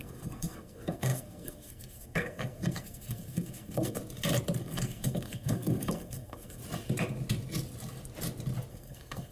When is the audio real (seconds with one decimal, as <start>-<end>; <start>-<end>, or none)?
4.0-4.6; 6.6-8.7